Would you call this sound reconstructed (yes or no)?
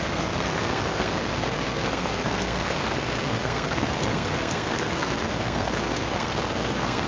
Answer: yes